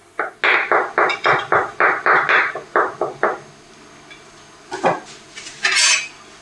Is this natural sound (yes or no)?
yes